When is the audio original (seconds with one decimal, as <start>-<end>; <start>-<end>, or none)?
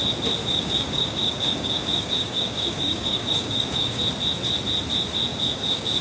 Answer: 0.0-0.4; 4.0-5.3